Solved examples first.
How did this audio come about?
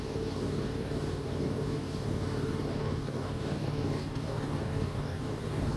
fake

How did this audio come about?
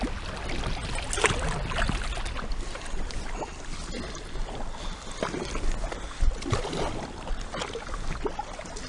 real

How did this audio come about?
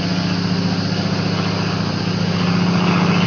real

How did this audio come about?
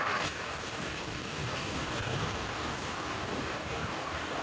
fake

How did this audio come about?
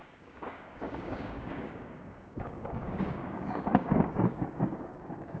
fake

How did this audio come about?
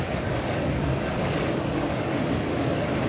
fake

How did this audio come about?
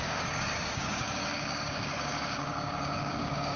fake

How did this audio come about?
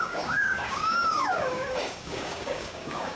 fake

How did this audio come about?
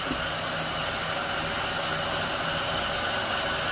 real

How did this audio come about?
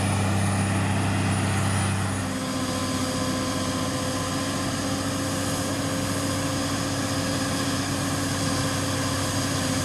real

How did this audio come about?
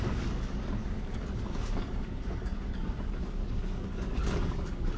fake